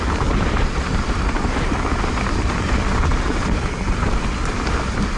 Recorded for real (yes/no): yes